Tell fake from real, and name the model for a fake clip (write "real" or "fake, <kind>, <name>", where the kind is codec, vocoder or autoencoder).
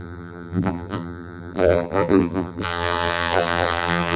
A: fake, vocoder, BigVGAN v2